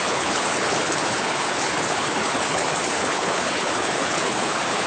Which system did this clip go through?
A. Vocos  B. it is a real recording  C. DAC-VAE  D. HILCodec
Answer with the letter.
D